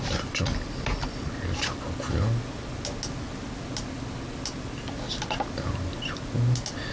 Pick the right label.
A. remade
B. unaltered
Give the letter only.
B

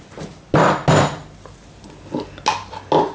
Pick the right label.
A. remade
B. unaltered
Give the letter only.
B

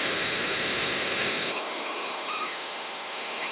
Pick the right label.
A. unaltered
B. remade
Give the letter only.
B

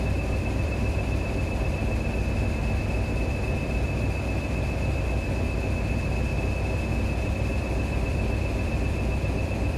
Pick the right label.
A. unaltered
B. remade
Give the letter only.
A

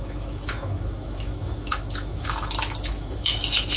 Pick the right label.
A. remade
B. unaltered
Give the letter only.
A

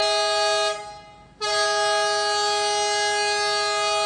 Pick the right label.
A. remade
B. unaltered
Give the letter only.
B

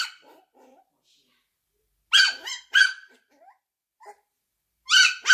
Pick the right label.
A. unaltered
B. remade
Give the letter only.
A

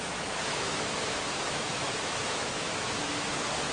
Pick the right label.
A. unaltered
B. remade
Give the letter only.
B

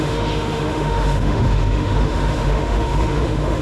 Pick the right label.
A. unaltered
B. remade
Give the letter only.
B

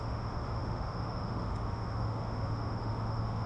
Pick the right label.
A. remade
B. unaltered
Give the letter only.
A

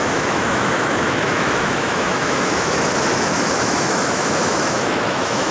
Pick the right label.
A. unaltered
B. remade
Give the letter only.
B